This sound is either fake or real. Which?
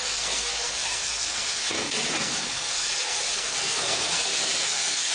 fake